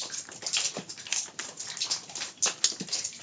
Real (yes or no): yes